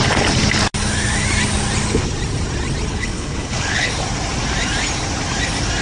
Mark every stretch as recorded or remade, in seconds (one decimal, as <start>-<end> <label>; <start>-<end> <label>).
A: 0.0-2.9 recorded; 2.9-3.9 remade; 3.9-5.8 recorded